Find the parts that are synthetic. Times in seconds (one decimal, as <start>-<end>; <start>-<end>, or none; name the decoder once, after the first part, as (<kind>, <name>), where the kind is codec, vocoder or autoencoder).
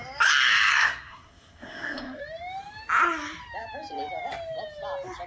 0.7-2.2 (codec, SNAC)